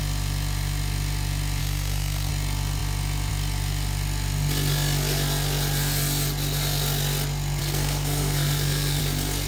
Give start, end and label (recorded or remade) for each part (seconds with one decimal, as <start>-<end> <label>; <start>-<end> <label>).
0.0-1.6 recorded; 1.6-2.3 remade; 2.3-7.6 recorded; 7.6-9.0 remade; 9.0-9.5 recorded